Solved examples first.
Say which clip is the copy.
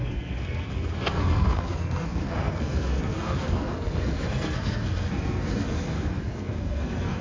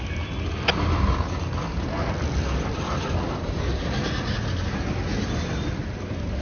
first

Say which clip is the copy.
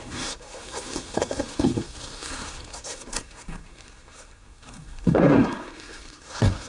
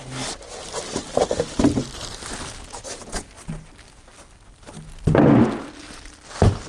first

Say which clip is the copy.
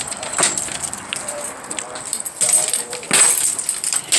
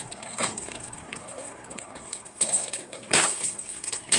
second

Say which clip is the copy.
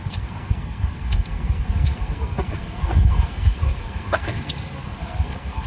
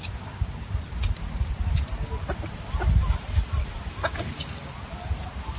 first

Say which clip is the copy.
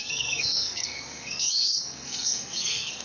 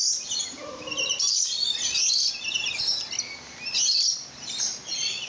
first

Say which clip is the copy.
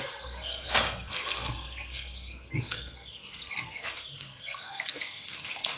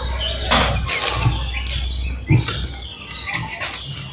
first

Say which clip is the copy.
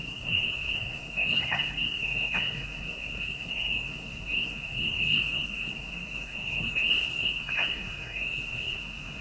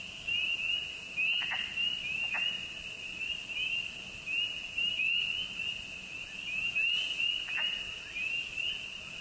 first